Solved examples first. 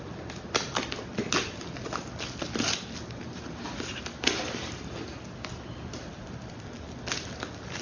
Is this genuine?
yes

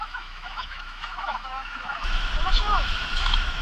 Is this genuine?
no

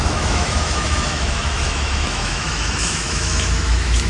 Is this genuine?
no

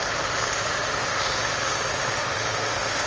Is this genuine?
no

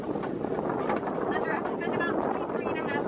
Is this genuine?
yes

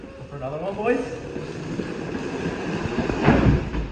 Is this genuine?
yes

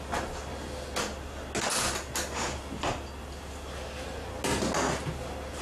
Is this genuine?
yes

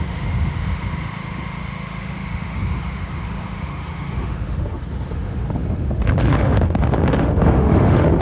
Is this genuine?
no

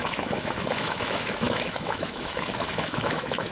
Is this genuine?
no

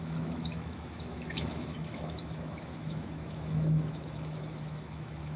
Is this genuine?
no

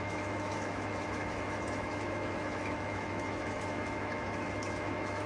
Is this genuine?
no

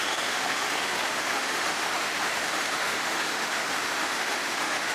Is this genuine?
no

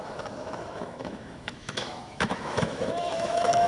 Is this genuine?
no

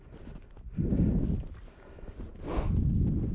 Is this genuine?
yes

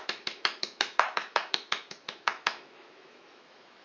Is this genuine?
no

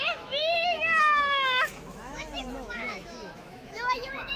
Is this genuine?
no